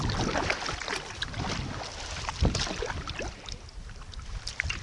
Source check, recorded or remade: recorded